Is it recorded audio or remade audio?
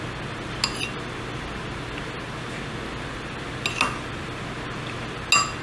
recorded